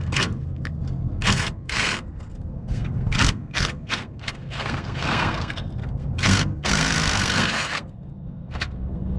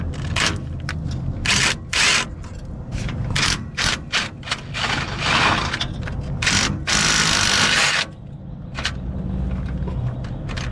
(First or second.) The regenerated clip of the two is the first